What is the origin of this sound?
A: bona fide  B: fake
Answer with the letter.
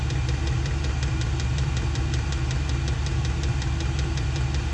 A